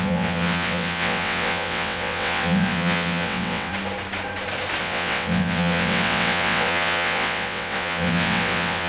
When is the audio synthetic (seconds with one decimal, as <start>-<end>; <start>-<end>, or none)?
0.0-3.7; 4.8-8.9